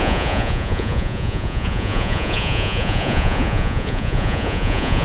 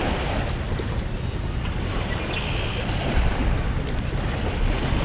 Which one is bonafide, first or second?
second